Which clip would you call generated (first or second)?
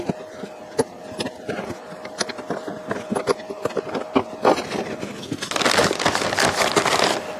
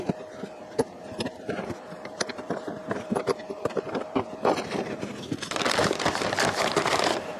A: second